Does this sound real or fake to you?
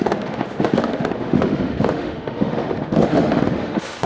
fake